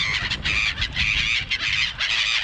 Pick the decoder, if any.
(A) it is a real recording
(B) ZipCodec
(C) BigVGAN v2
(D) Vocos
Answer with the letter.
A